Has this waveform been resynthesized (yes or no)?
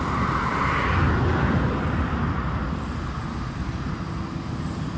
no